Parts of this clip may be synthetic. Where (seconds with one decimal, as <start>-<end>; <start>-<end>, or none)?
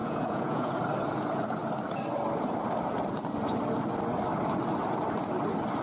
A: 0.0-0.7